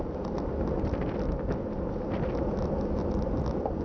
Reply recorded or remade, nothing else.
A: recorded